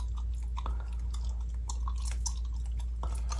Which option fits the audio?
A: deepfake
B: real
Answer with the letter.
B